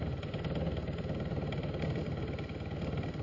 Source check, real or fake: real